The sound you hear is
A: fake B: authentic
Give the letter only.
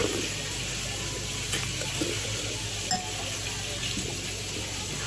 B